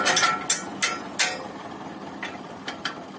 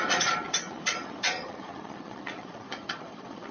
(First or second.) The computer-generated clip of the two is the second